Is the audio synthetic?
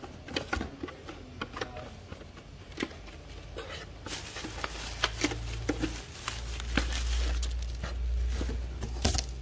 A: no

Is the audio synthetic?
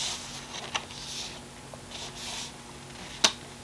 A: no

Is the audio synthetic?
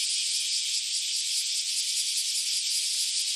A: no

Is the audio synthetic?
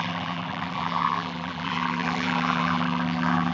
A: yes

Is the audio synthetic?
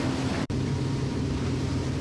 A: yes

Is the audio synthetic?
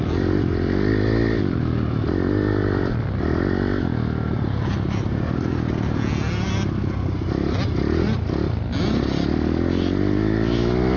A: no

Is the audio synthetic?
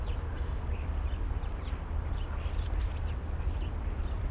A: yes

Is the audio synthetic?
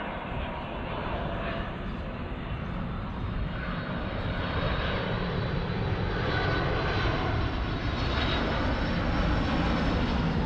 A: no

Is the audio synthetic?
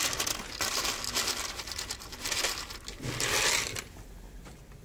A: no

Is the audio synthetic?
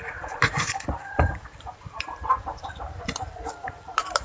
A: yes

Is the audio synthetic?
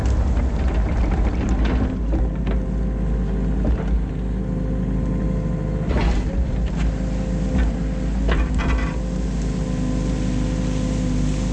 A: no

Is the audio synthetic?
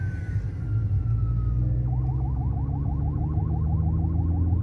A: no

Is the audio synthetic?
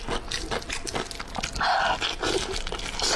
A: no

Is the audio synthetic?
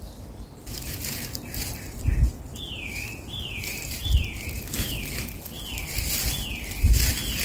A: no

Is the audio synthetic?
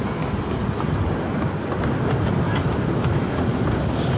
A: yes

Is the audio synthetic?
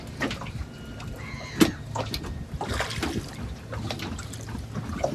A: no